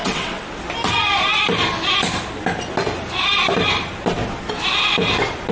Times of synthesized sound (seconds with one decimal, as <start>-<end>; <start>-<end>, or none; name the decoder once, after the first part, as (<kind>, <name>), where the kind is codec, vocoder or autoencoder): 0.0-0.6 (vocoder, WaveNeXt)